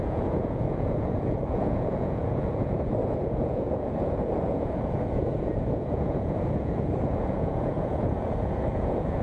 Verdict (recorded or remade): remade